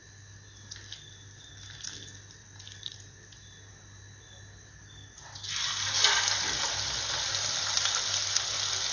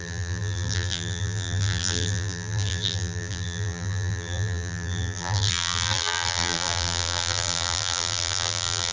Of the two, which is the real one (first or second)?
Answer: first